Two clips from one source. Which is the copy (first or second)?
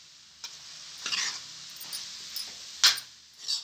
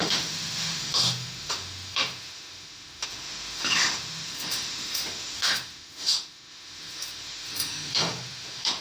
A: second